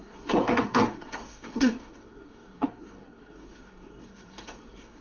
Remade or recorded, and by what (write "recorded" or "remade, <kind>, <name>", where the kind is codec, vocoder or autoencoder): remade, codec, SNAC